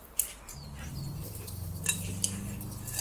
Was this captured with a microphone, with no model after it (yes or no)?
yes